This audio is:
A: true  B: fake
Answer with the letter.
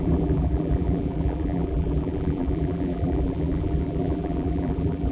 B